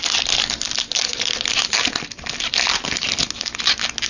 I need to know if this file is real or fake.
real